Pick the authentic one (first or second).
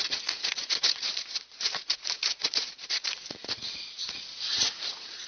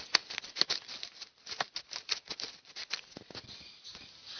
second